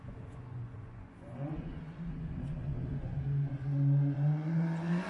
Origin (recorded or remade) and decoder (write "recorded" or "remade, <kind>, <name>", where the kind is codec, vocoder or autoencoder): remade, vocoder, Vocos